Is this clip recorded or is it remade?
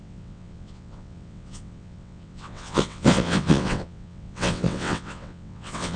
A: remade